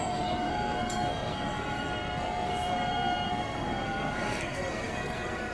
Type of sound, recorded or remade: remade